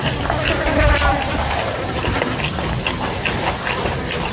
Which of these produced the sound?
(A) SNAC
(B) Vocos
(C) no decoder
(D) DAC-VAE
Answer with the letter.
C